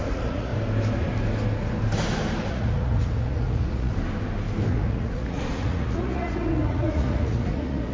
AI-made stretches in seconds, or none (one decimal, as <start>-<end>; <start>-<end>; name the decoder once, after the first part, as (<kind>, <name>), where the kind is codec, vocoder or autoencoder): 0.0-0.5 (vocoder, Vocos); 2.5-3.9; 4.7-7.9